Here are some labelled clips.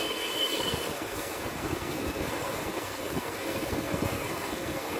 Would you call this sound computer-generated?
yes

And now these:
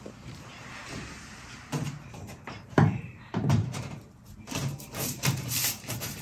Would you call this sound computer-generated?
yes